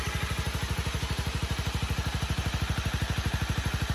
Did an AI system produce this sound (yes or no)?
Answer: no